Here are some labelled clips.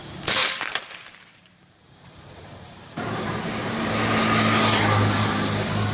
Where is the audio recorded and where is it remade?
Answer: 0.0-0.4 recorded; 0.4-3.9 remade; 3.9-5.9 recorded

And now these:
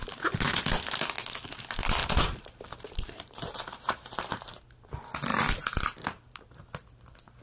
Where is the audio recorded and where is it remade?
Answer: 0.0-2.0 recorded; 2.0-4.6 remade; 4.6-5.3 recorded; 5.3-6.6 remade; 6.6-7.4 recorded

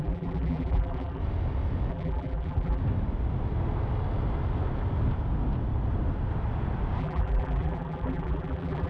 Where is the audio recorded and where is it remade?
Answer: 0.0-1.2 remade; 1.2-1.9 recorded; 1.9-2.8 remade; 2.8-7.0 recorded; 7.0-8.9 remade

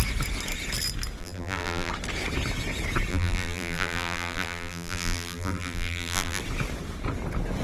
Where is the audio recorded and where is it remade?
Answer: 0.0-1.2 recorded; 1.2-1.9 remade; 1.9-3.1 recorded; 3.1-6.4 remade; 6.4-7.6 recorded

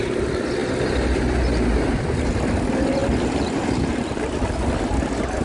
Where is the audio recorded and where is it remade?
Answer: 0.0-0.6 recorded; 0.6-1.2 remade; 1.2-3.0 recorded; 3.0-4.2 remade; 4.2-5.4 recorded